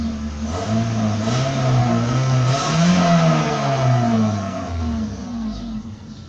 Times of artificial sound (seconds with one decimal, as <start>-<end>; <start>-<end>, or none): 1.8-2.9; 3.4-6.3

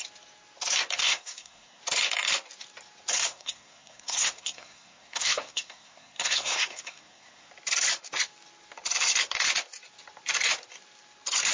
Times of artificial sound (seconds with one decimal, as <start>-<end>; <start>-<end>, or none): 1.0-1.8; 3.3-7.5

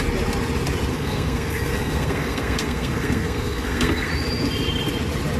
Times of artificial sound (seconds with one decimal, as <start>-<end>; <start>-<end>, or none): 0.9-4.1

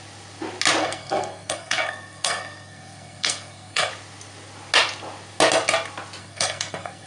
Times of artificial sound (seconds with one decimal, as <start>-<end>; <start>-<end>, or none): 0.8-3.9; 6.2-7.1

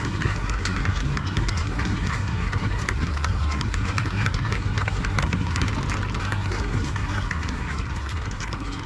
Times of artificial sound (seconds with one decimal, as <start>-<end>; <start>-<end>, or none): 0.0-5.7; 6.2-8.9

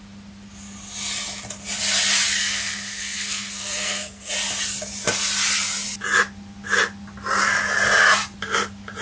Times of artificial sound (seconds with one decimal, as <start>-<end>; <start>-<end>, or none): 2.4-4.3